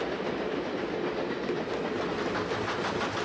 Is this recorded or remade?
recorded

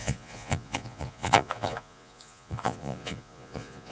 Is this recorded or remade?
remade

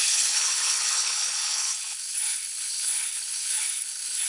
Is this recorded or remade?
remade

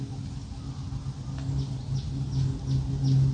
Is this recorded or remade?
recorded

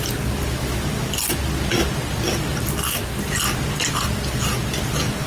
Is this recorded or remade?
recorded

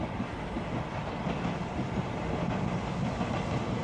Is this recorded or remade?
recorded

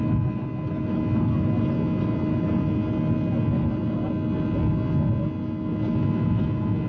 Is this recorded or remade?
recorded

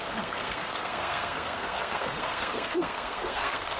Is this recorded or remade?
remade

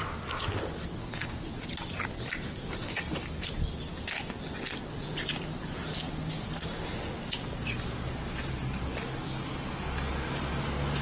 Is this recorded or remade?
recorded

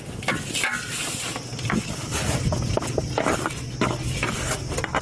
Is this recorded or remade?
recorded